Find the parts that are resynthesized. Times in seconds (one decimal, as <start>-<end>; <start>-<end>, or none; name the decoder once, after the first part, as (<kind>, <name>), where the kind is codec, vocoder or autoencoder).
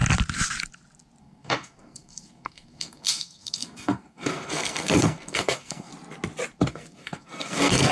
1.2-5.9 (codec, SNAC); 6.7-7.9